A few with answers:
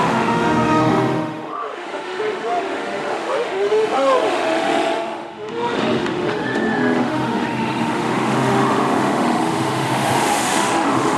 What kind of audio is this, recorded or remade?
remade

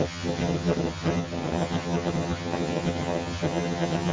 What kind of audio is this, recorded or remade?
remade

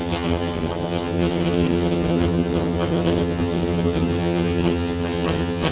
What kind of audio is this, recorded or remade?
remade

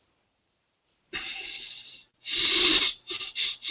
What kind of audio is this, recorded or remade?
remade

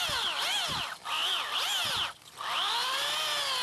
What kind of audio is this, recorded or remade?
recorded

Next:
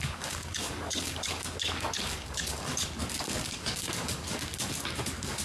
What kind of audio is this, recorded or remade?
remade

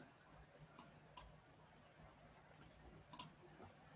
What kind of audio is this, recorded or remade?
recorded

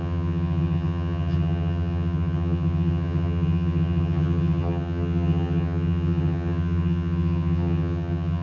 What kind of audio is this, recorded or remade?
remade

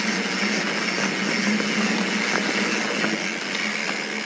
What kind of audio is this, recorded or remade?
recorded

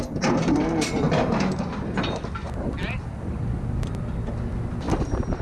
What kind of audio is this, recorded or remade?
recorded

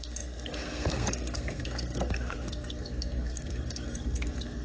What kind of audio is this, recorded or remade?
remade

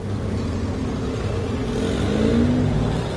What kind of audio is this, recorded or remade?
recorded